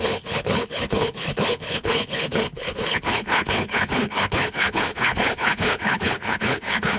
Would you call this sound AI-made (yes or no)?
yes